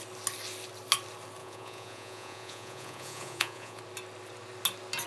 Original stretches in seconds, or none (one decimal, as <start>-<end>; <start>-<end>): 0.0-1.4; 3.8-5.1